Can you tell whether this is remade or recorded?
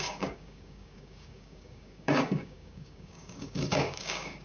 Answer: remade